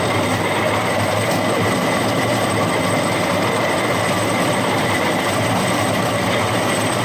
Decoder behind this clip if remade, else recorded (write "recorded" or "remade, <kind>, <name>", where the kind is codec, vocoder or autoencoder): recorded